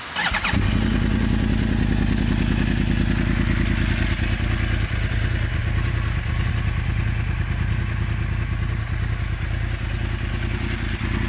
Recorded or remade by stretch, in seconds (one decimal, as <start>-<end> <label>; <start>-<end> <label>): 0.0-11.3 recorded